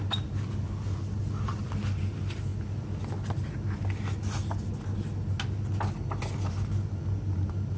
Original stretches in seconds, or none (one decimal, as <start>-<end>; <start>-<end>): 0.0-7.8